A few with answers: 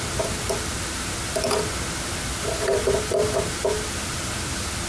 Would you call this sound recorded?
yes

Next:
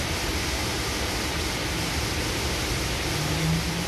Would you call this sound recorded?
yes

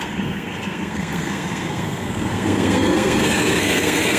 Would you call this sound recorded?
no